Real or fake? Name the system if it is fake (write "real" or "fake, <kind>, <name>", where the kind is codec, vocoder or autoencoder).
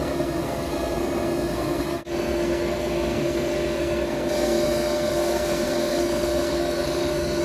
fake, codec, SNAC